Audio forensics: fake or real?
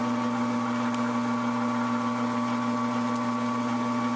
real